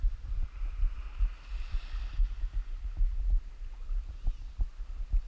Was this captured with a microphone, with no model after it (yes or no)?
yes